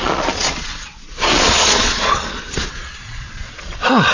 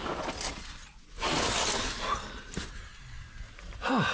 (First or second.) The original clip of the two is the second